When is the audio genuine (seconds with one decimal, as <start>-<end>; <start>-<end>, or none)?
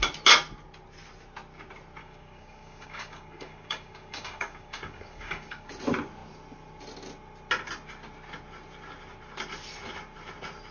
0.0-2.0; 5.7-10.7